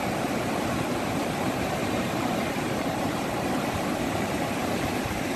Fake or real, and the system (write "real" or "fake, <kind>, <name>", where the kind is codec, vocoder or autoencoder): fake, vocoder, BigVGAN v2